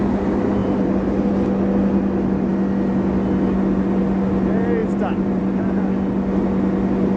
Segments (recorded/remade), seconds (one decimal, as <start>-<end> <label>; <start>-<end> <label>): 0.0-0.6 recorded; 0.6-1.3 remade; 1.3-4.8 recorded; 4.8-5.4 remade; 5.4-7.2 recorded